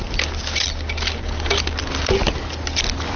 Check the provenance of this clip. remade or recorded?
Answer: recorded